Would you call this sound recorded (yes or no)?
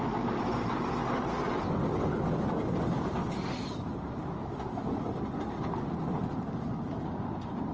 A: yes